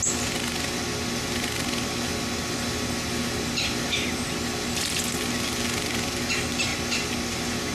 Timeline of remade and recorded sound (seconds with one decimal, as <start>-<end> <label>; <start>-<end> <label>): 0.0-7.7 recorded